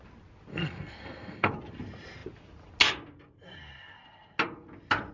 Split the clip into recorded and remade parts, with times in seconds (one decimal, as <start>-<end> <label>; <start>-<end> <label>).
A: 0.0-0.5 recorded; 0.5-1.5 remade; 1.5-5.1 recorded